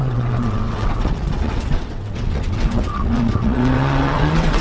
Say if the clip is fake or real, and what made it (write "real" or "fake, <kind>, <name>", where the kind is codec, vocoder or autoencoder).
fake, vocoder, WaveNeXt